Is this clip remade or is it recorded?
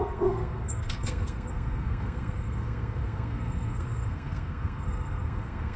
remade